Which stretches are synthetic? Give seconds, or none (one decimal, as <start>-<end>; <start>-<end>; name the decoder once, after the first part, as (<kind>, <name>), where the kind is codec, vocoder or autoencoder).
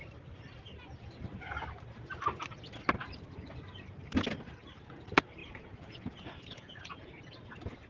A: 5.4-7.1 (vocoder, Vocos)